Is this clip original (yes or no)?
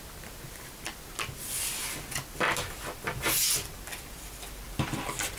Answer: yes